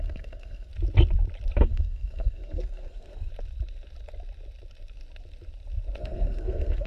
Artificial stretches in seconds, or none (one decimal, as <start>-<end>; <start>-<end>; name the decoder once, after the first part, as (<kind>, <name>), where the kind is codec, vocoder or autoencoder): 0.0-0.7 (codec, SNAC); 1.6-3.3; 6.0-6.9